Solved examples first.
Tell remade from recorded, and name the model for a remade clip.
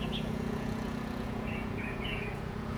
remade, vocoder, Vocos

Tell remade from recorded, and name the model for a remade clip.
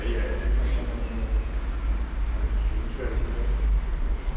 recorded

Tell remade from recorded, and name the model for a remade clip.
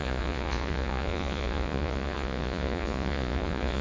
remade, vocoder, Vocos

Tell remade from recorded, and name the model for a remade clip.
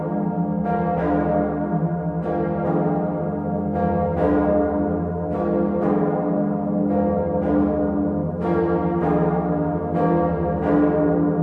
recorded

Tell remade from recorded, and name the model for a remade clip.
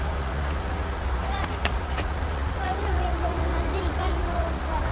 remade, vocoder, Vocos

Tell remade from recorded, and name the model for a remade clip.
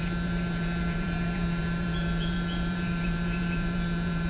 remade, vocoder, Vocos